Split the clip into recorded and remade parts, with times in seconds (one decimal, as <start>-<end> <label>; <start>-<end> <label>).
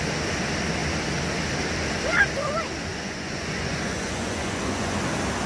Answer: 0.0-2.9 recorded; 2.9-5.0 remade; 5.0-5.5 recorded